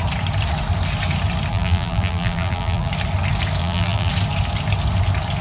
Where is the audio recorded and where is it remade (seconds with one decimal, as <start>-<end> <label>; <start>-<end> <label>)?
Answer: 0.0-1.5 recorded; 1.5-2.9 remade; 2.9-3.6 recorded; 3.6-4.1 remade; 4.1-5.4 recorded